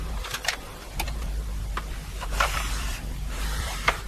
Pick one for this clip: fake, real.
fake